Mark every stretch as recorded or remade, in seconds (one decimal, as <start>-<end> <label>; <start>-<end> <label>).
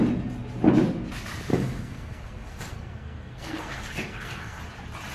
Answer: 0.0-1.5 recorded; 1.5-4.6 remade; 4.6-5.1 recorded